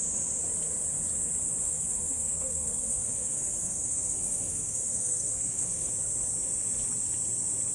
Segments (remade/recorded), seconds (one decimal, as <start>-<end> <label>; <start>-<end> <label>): 0.0-1.6 recorded; 1.6-5.9 remade; 5.9-7.7 recorded